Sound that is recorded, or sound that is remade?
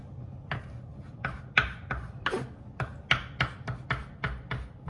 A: recorded